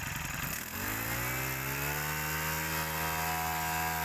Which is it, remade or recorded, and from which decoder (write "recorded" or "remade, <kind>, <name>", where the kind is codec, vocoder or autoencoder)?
recorded